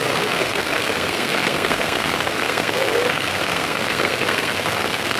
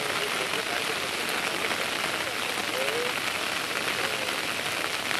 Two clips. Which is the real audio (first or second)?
second